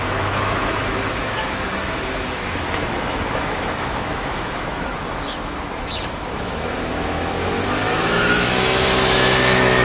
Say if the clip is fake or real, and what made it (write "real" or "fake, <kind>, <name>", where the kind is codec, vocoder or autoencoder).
fake, autoencoder, DAC-VAE